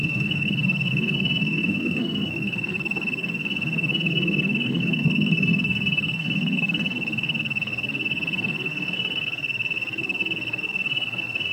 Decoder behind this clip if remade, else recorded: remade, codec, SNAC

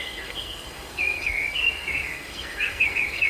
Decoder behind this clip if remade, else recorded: remade, codec, SNAC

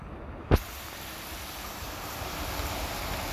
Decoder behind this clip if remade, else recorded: recorded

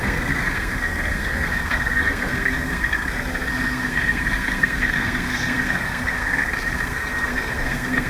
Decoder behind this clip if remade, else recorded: remade, codec, SNAC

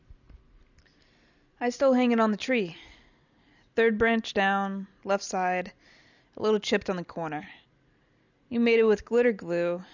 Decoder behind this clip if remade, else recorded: recorded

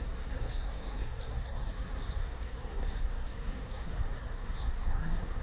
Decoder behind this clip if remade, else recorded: remade, codec, SNAC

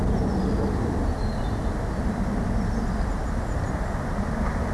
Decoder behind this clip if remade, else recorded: recorded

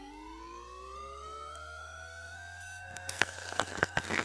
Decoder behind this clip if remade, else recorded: remade, codec, SNAC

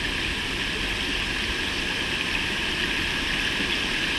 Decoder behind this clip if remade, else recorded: recorded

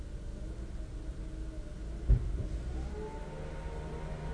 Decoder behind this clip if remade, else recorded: recorded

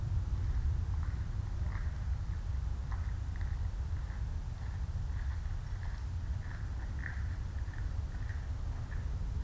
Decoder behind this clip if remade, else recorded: recorded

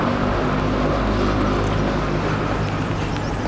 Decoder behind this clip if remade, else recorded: recorded